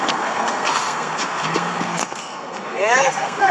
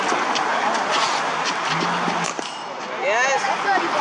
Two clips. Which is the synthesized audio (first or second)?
first